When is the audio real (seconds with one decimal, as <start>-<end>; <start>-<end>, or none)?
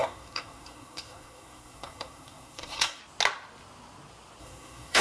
3.0-4.4